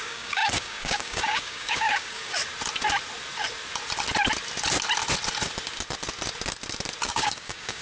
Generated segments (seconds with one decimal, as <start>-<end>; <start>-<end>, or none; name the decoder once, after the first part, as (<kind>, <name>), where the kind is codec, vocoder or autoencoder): 0.0-2.4 (codec, DAC); 7.1-7.8

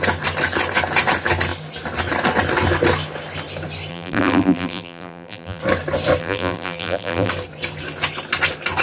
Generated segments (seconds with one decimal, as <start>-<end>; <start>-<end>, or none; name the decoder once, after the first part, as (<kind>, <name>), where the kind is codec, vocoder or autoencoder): 3.9-5.6 (vocoder, BigVGAN v2); 6.2-7.3

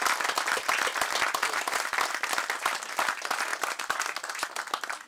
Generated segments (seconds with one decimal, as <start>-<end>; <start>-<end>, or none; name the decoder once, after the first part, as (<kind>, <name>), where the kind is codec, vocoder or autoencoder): none

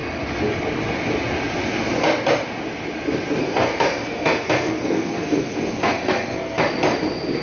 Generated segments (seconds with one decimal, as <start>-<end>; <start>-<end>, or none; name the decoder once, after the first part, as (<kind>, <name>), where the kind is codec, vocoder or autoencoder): 3.4-6.6 (codec, SNAC)

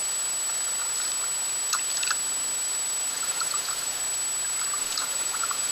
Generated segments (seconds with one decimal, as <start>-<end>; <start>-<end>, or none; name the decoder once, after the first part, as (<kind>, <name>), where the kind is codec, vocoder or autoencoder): 3.1-4.0 (vocoder, Vocos); 4.8-5.7

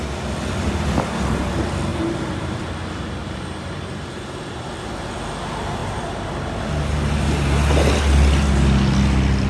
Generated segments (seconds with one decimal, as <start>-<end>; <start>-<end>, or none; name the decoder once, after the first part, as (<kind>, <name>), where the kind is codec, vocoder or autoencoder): 1.9-2.6 (vocoder, BigVGAN v2); 3.2-4.7; 5.8-6.7

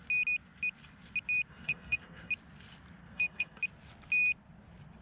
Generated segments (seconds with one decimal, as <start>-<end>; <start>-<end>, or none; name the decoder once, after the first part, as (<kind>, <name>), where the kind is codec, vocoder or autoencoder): 1.5-2.3 (codec, SNAC); 3.0-3.6

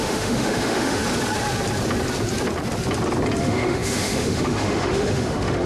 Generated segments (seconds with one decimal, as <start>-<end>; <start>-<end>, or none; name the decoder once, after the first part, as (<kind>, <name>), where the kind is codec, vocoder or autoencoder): 0.0-1.0 (autoencoder, DAC-VAE); 3.4-5.7